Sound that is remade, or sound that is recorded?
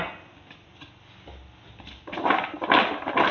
recorded